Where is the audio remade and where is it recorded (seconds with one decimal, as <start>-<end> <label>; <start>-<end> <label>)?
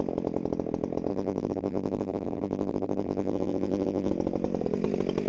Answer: 0.0-1.1 recorded; 1.1-4.1 remade; 4.1-5.3 recorded